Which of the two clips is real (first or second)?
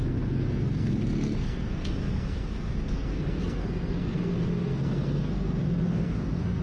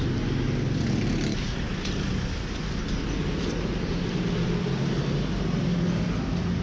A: second